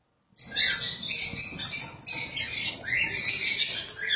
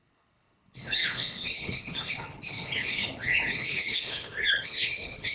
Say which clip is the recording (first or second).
first